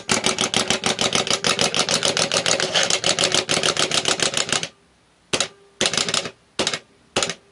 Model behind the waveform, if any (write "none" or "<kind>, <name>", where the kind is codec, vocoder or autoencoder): none